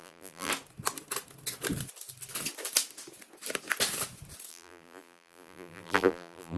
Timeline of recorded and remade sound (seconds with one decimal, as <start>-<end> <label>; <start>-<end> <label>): 0.0-0.5 remade; 0.5-4.5 recorded; 4.5-6.6 remade